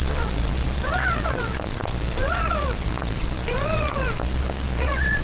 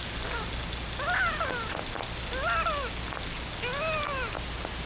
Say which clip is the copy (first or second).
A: first